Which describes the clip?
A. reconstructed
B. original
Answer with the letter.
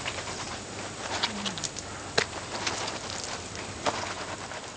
B